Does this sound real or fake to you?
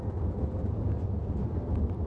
real